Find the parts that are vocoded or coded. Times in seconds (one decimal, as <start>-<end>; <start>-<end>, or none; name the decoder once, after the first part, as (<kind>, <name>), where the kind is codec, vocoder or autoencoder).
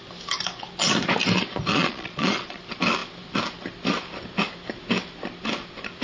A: 1.7-2.6 (vocoder, Vocos)